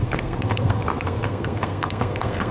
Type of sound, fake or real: fake